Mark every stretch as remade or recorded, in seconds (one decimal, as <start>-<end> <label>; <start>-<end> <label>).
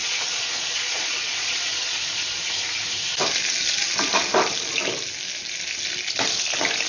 0.0-2.4 remade; 2.4-6.9 recorded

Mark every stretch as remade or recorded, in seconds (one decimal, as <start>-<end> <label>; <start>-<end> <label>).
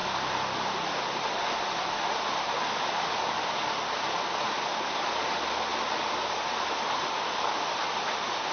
0.0-8.5 recorded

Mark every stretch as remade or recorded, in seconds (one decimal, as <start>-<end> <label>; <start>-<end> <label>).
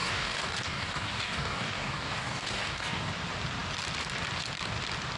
0.0-3.1 remade; 3.1-5.2 recorded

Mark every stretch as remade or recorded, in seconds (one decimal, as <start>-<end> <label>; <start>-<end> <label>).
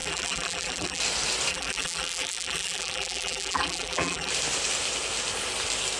0.0-1.0 remade; 1.0-1.5 recorded; 1.5-4.3 remade; 4.3-6.0 recorded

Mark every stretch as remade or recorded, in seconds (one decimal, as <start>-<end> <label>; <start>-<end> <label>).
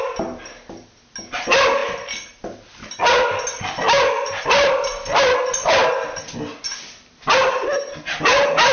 0.0-8.7 recorded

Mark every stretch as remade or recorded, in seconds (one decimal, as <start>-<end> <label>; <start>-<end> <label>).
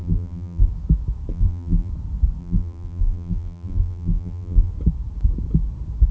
0.0-0.7 remade; 0.7-1.3 recorded; 1.3-1.9 remade; 1.9-2.4 recorded; 2.4-4.7 remade; 4.7-6.1 recorded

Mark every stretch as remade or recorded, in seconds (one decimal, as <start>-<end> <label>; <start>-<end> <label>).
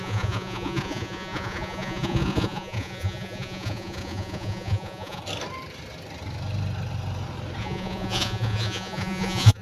0.0-5.2 remade; 5.2-7.6 recorded; 7.6-9.6 remade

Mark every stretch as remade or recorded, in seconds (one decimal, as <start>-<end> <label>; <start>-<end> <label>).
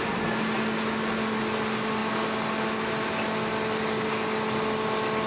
0.0-5.3 recorded